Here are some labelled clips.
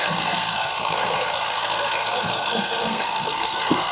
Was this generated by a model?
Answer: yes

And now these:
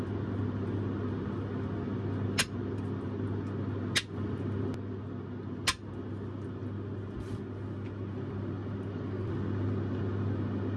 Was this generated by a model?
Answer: no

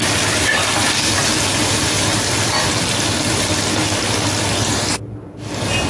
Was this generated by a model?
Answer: no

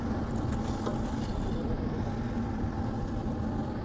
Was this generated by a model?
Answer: no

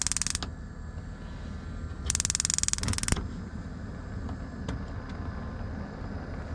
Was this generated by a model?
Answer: no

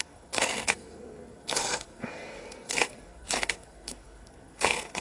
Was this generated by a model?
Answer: yes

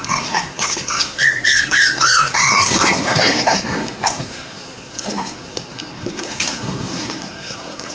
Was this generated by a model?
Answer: yes